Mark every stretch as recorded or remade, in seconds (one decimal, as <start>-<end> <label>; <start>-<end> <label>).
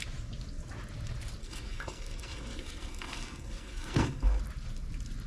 0.0-1.4 recorded; 1.4-4.4 remade; 4.4-5.3 recorded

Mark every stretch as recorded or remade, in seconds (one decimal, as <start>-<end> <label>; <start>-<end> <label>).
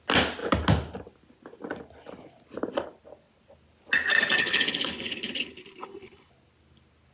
0.0-4.4 recorded; 4.4-6.3 remade; 6.3-7.1 recorded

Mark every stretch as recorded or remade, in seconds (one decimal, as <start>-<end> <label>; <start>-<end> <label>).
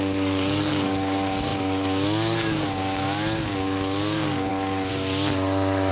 0.0-4.9 remade; 4.9-5.9 recorded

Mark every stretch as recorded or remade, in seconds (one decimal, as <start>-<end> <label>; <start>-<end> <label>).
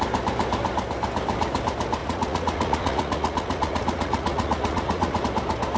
0.0-2.0 recorded; 2.0-5.2 remade; 5.2-5.8 recorded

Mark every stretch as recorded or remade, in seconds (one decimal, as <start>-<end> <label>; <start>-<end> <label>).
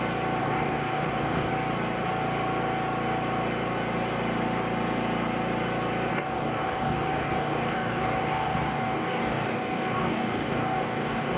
0.0-0.4 recorded; 0.4-1.5 remade; 1.5-6.1 recorded; 6.1-11.4 remade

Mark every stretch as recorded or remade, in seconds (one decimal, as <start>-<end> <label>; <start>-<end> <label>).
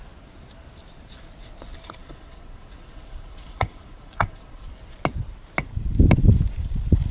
0.0-2.0 recorded; 2.0-4.7 remade; 4.7-7.1 recorded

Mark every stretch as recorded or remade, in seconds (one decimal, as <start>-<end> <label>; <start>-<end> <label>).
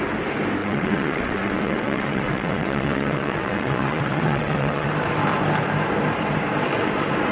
0.0-0.6 recorded; 0.6-4.9 remade; 4.9-7.3 recorded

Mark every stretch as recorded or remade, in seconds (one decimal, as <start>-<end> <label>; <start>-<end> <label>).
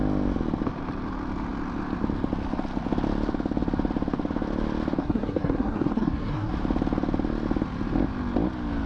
0.0-5.0 recorded; 5.0-6.5 remade; 6.5-8.9 recorded